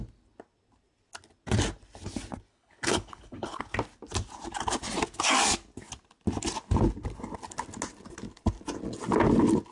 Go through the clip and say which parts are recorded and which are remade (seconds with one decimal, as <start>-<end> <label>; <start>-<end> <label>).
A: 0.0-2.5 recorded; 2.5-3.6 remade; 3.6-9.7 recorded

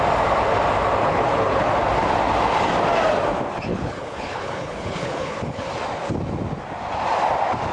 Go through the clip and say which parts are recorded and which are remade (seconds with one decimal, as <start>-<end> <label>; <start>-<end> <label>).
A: 0.0-1.0 recorded; 1.0-1.7 remade; 1.7-3.7 recorded; 3.7-5.7 remade; 5.7-7.7 recorded

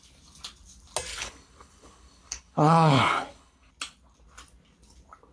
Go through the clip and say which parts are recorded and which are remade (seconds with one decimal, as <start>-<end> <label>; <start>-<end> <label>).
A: 0.0-1.1 recorded; 1.1-3.7 remade; 3.7-5.3 recorded

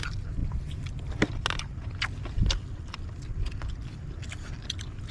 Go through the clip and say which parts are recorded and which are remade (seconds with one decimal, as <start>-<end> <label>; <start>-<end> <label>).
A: 0.0-5.1 recorded